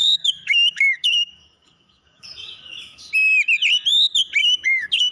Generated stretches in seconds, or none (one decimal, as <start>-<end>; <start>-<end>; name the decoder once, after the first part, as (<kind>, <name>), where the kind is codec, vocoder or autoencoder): 0.0-3.1 (codec, DAC); 4.4-5.1